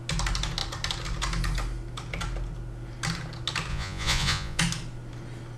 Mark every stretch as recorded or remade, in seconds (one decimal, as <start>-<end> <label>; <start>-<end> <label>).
0.0-3.7 recorded; 3.7-4.6 remade; 4.6-5.6 recorded